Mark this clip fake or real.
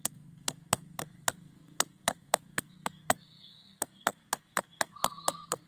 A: fake